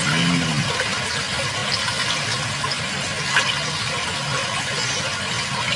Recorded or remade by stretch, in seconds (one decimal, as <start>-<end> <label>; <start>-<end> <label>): 0.0-5.8 recorded